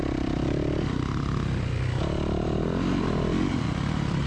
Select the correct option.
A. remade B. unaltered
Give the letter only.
B